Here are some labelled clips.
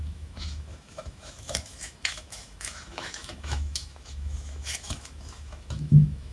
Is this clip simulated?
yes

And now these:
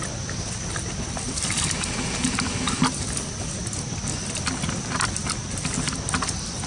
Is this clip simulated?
no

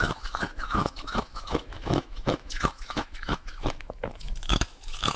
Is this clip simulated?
yes